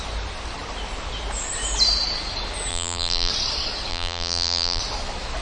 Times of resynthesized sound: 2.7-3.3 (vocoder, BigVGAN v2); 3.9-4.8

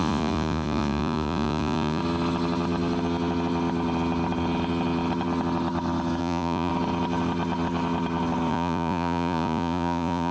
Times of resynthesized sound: 0.0-2.0 (vocoder, Vocos); 6.2-6.7; 8.5-10.3

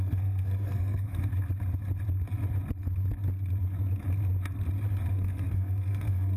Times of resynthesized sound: 0.0-1.3 (codec, SNAC); 5.1-6.4

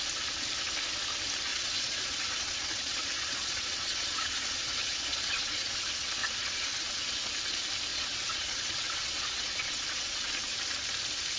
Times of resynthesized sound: 1.5-5.8 (vocoder, Vocos); 6.2-7.3; 7.9-10.3

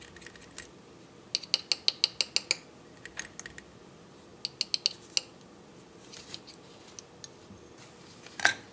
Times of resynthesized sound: none